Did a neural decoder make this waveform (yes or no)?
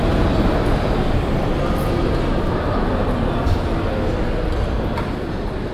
no